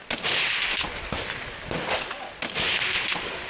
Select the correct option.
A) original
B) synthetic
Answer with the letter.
A